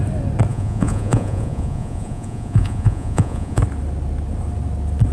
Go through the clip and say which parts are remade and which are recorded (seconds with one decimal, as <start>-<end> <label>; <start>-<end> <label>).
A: 0.0-0.5 recorded; 0.5-3.6 remade; 3.6-5.1 recorded